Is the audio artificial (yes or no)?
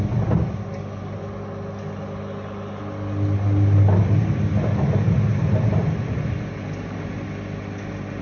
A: no